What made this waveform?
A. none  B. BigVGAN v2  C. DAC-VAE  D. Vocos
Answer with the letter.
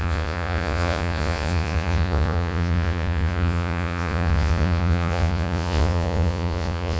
D